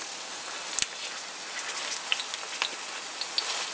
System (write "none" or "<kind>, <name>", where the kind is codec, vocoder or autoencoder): none